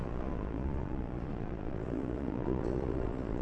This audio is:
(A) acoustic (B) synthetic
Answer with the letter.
B